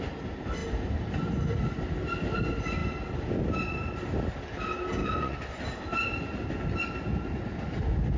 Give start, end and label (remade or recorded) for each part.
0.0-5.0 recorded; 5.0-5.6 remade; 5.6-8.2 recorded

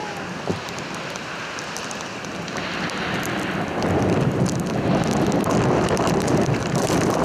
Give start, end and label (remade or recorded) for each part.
0.0-7.2 recorded

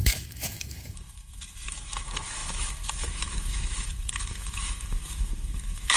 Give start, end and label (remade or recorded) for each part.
0.0-6.0 remade

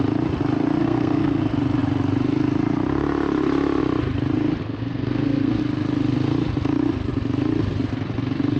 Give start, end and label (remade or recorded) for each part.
0.0-0.8 recorded; 0.8-1.4 remade; 1.4-4.6 recorded; 4.6-5.6 remade; 5.6-8.6 recorded

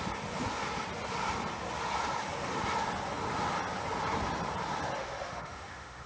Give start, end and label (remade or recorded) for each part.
0.0-5.0 recorded; 5.0-6.1 remade

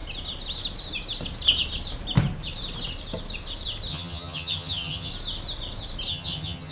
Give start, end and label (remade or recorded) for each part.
0.0-3.9 recorded; 3.9-5.1 remade; 5.1-6.1 recorded; 6.1-6.7 remade

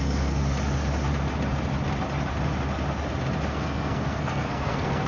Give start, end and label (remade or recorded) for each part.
0.0-0.4 remade; 0.4-3.5 recorded; 3.5-5.1 remade